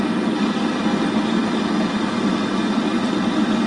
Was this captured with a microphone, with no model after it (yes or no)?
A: yes